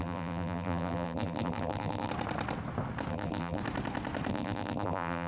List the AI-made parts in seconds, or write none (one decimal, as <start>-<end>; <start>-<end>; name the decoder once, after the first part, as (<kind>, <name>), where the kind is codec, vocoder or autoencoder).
0.0-2.1 (vocoder, BigVGAN v2); 3.1-3.6; 4.3-5.3